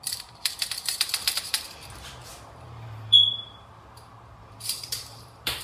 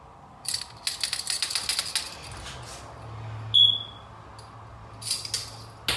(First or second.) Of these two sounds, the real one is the second